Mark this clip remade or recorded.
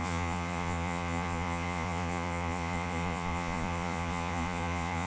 remade